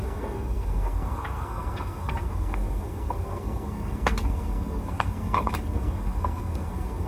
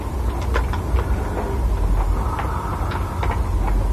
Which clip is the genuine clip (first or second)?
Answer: second